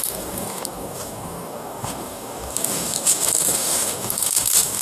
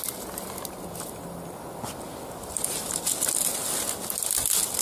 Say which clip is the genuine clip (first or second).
second